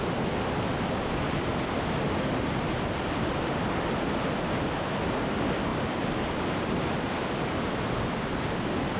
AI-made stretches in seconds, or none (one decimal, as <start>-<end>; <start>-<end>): none